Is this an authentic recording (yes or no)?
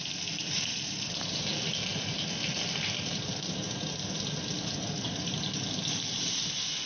yes